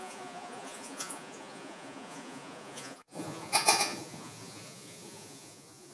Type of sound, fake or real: fake